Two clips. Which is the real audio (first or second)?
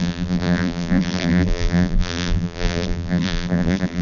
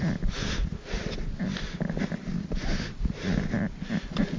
second